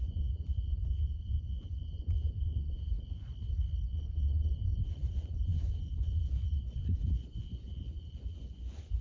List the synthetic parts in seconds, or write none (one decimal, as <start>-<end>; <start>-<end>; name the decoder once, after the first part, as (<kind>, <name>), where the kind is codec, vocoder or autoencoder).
0.0-3.3 (vocoder, Vocos); 3.9-9.0